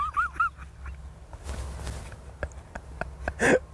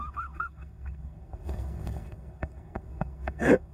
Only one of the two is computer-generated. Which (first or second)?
second